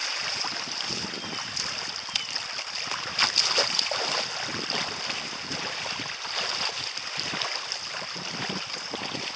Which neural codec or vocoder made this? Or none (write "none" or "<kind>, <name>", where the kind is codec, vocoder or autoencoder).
none